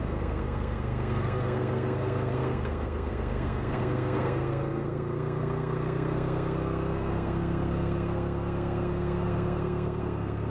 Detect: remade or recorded remade